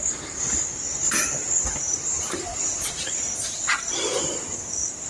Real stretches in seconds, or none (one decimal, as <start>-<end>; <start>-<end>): 0.0-1.6

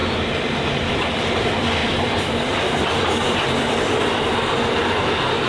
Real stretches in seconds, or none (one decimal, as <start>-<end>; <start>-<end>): none

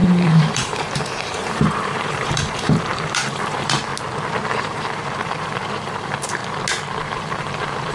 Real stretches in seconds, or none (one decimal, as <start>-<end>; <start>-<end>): 3.9-4.5; 6.4-7.0

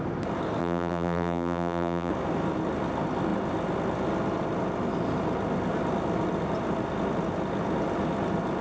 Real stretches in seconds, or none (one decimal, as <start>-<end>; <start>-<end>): 0.0-0.6; 2.1-8.6

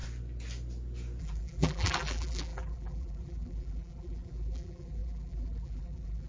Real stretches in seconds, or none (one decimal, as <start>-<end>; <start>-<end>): 0.0-1.2

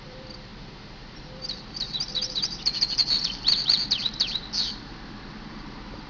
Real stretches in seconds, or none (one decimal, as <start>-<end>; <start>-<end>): none

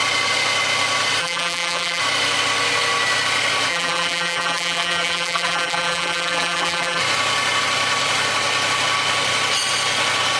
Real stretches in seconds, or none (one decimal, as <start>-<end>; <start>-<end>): 0.0-1.2; 2.0-3.7; 7.0-10.4

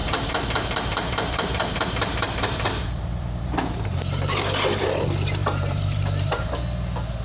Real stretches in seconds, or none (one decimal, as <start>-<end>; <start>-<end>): 3.9-5.4; 6.5-7.2